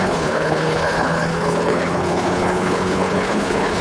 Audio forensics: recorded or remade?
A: remade